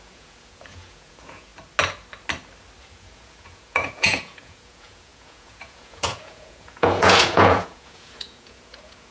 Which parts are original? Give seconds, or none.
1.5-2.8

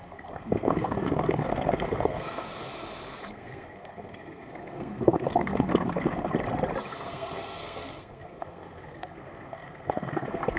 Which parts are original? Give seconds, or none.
2.5-3.3; 6.3-6.9

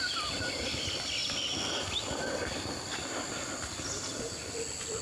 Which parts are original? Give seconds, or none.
0.0-5.0

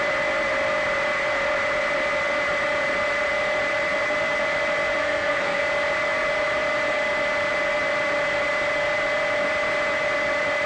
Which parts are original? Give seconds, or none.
0.0-5.0; 5.6-10.7

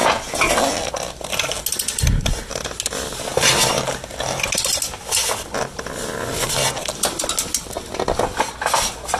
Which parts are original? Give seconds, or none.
0.5-9.2

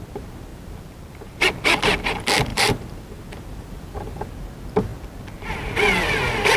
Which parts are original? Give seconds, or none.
0.0-0.5; 1.8-2.5; 4.2-6.6

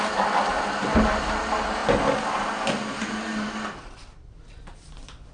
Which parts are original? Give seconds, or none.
0.0-5.3

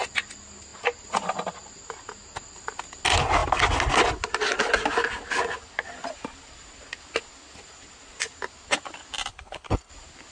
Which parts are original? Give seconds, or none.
0.0-9.3; 9.9-10.3